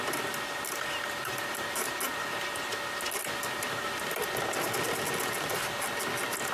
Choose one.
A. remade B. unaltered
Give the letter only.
B